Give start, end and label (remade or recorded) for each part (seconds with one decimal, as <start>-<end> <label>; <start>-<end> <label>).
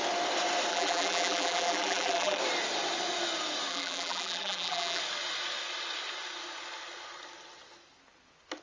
0.0-0.7 recorded; 0.7-2.4 remade; 2.4-3.7 recorded; 3.7-5.0 remade; 5.0-8.6 recorded